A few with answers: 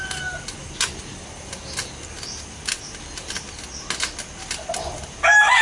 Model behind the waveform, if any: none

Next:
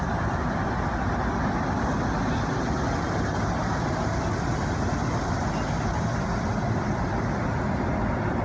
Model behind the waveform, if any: none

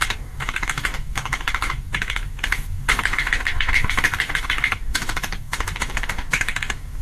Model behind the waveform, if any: codec, DAC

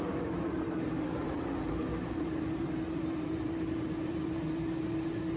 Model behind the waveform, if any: vocoder, BigVGAN v2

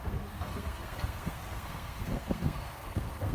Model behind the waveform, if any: codec, SNAC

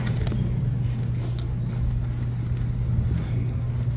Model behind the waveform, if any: none